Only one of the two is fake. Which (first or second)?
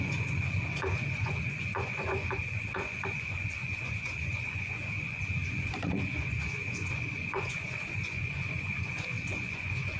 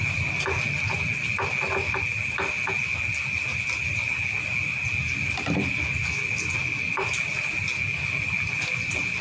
first